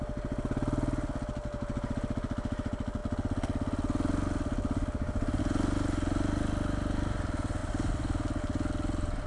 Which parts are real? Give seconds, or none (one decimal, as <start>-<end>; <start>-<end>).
0.0-9.3